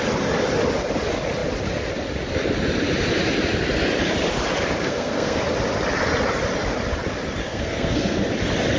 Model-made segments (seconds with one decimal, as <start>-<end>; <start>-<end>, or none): 4.8-5.4; 7.4-8.2